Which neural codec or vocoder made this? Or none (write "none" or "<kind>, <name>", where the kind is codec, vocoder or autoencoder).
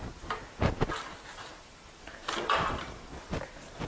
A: none